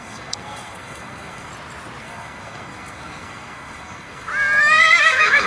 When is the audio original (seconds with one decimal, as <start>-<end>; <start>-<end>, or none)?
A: 1.5-2.0; 4.3-5.0